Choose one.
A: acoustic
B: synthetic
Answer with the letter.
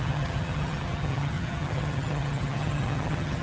B